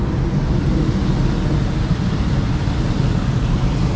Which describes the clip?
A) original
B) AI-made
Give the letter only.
A